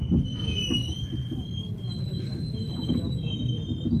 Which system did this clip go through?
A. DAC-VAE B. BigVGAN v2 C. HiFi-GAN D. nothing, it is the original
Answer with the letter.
B